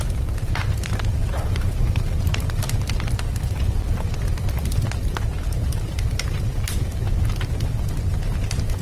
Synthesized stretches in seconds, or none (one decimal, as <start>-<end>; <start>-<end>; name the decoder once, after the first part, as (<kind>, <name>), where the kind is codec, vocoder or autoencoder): 1.2-2.6 (vocoder, BigVGAN v2)